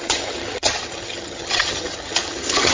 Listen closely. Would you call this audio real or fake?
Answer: fake